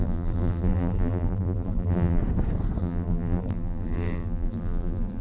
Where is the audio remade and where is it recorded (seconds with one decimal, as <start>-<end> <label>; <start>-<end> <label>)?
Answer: 0.0-2.2 remade; 2.2-2.8 recorded; 2.8-5.2 remade